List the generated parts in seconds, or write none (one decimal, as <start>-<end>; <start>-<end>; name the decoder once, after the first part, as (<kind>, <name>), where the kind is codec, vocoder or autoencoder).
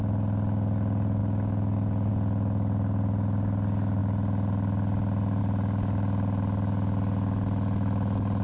none